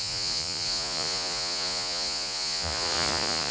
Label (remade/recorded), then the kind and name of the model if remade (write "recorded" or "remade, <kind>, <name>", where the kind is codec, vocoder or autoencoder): remade, vocoder, Vocos